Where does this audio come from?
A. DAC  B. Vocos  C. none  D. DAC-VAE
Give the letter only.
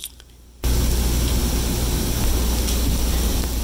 C